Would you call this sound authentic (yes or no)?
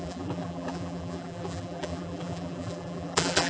no